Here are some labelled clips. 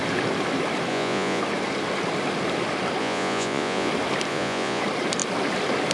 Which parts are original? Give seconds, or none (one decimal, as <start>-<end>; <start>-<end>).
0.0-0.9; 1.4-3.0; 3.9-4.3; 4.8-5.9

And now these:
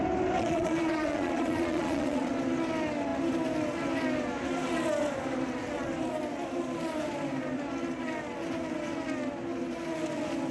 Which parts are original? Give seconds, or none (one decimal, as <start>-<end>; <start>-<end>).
0.0-0.4; 2.3-10.5

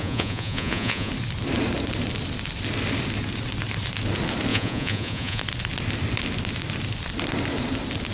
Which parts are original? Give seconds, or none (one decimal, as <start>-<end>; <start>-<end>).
1.1-4.5; 5.4-8.1

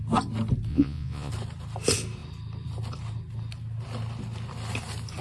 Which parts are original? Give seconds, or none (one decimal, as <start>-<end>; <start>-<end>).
0.0-0.7; 1.3-5.2